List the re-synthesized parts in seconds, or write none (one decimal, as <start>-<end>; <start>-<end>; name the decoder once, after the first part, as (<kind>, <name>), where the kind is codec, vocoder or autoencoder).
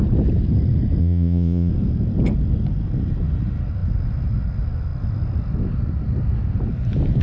1.0-1.7 (vocoder, Vocos)